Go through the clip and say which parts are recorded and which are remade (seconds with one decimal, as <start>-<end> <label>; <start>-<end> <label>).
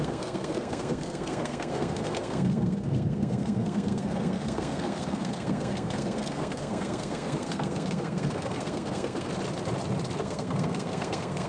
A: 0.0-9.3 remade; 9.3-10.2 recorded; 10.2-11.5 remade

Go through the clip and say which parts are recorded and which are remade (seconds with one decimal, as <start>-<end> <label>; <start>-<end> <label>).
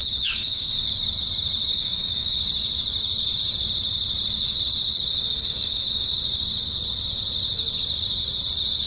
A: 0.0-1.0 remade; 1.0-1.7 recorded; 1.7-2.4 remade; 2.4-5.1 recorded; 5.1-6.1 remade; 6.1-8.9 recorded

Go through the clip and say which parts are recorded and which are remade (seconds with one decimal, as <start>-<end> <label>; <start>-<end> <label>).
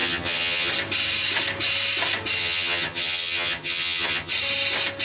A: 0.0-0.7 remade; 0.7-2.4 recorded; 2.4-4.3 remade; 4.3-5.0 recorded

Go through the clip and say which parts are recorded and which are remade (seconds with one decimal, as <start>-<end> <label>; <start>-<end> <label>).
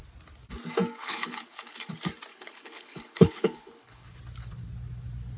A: 0.0-1.0 recorded; 1.0-1.9 remade; 1.9-2.3 recorded; 2.3-4.2 remade; 4.2-5.4 recorded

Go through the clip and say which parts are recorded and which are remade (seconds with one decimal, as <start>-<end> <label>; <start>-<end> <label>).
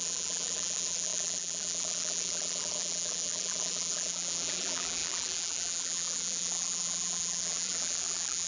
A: 0.0-8.5 remade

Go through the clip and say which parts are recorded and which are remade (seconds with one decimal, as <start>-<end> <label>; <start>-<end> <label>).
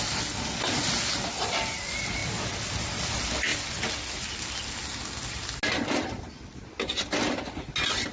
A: 0.0-8.1 recorded